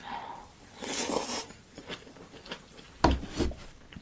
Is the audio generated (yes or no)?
no